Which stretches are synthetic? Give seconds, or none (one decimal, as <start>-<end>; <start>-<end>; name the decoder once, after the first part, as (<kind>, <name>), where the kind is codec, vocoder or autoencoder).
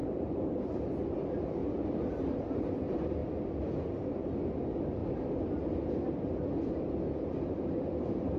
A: 0.0-0.8 (vocoder, BigVGAN v2); 1.6-2.2